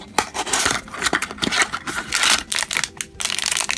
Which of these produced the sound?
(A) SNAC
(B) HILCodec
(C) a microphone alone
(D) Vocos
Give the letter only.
C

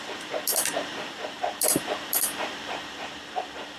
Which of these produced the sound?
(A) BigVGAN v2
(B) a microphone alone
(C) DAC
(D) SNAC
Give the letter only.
A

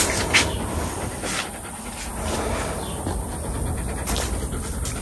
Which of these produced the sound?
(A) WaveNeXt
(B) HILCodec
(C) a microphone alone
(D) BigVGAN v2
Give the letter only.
C